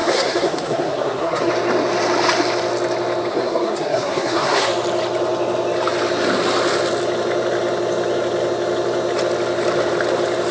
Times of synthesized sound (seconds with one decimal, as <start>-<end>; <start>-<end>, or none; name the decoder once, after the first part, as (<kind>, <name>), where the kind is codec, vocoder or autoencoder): 0.0-1.5 (codec, SNAC); 3.3-4.7